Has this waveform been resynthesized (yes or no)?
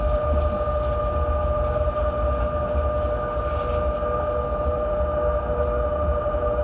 no